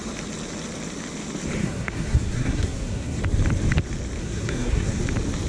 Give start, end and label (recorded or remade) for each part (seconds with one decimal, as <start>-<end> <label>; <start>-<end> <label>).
0.0-1.6 recorded; 1.6-3.2 remade; 3.2-4.2 recorded; 4.2-5.0 remade; 5.0-5.5 recorded